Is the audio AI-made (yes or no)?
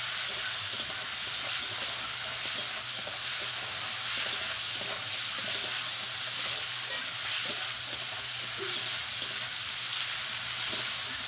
no